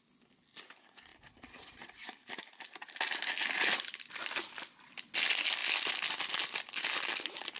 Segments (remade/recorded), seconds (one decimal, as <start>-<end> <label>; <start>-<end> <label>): 0.0-7.6 recorded